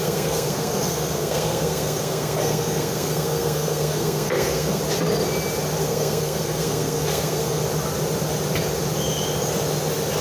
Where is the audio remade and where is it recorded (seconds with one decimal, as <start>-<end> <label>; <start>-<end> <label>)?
0.0-4.8 remade; 4.8-5.8 recorded; 5.8-7.6 remade; 7.6-10.2 recorded